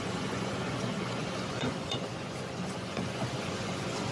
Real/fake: fake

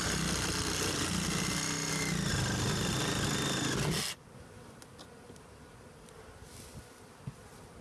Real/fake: real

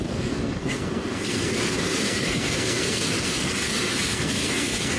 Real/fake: fake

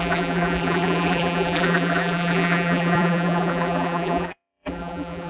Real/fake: fake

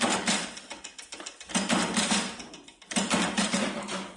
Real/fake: real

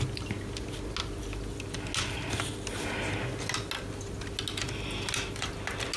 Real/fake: real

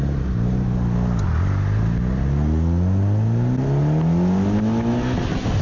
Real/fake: real